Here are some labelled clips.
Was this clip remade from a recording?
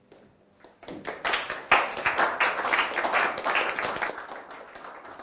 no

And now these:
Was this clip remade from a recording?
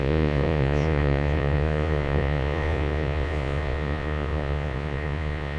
yes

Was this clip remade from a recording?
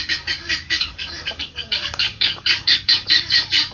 yes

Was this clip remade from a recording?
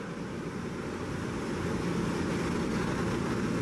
no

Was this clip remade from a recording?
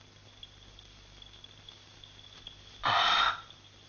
no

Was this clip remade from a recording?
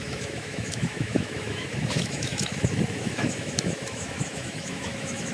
yes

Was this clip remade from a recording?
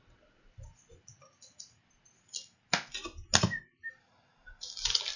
no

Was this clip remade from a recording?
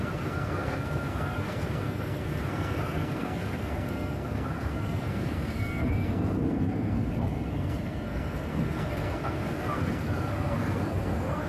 yes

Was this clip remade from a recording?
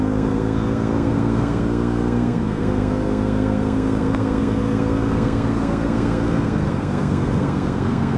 yes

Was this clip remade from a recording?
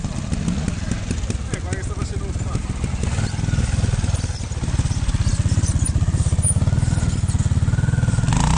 no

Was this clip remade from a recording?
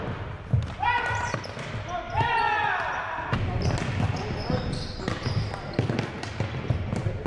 no